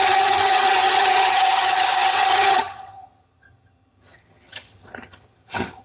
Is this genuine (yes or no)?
no